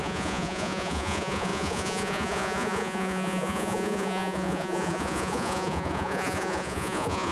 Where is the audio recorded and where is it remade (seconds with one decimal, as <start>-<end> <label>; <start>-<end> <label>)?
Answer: 0.0-7.3 remade